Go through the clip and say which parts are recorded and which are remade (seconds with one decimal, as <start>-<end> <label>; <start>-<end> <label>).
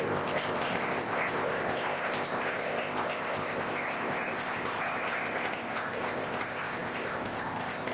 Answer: 0.0-7.9 remade